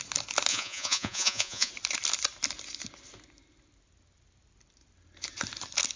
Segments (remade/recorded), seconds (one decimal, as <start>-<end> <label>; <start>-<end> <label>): 0.0-0.5 recorded; 0.5-1.7 remade; 1.7-6.0 recorded